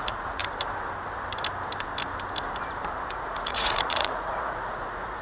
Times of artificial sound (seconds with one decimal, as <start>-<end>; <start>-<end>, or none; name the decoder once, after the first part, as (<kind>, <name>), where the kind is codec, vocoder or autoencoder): 0.0-0.4 (vocoder, Vocos); 3.1-5.2